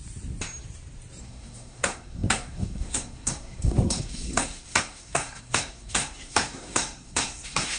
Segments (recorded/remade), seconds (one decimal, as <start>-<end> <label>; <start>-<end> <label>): 0.0-1.2 recorded; 1.2-7.8 remade